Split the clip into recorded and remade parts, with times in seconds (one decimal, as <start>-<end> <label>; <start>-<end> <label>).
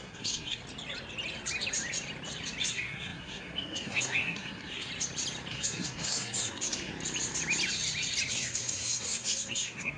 0.0-0.6 remade; 0.6-2.7 recorded; 2.7-4.9 remade; 4.9-5.5 recorded; 5.5-6.9 remade; 6.9-8.3 recorded; 8.3-10.0 remade